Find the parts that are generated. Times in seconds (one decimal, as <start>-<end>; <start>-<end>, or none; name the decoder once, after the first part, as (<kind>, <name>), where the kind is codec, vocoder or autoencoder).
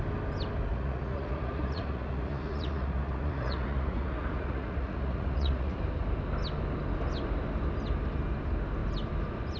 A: 0.7-5.8 (vocoder, Vocos)